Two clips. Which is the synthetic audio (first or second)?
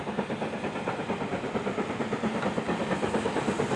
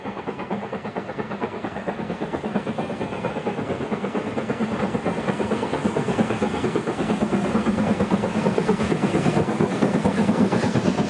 second